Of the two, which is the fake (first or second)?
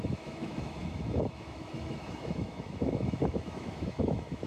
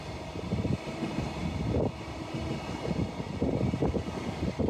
first